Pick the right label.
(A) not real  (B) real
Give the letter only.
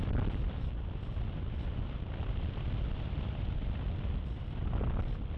B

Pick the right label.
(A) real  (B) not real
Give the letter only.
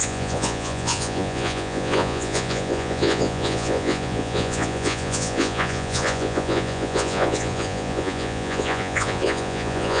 B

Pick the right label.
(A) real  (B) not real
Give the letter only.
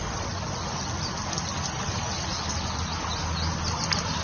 A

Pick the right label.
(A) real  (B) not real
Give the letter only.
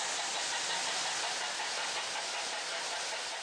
A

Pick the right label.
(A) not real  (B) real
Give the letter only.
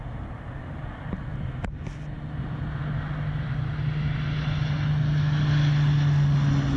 B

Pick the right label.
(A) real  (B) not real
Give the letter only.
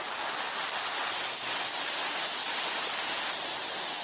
A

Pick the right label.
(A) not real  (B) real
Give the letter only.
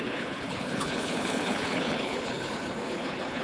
A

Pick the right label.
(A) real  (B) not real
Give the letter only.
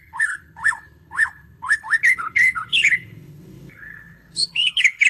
B